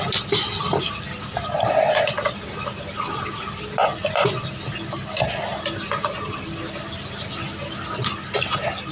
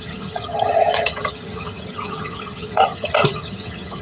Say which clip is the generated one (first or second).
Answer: second